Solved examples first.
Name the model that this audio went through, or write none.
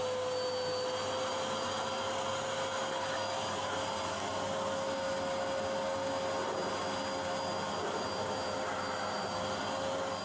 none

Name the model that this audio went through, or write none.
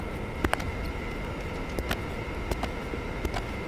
none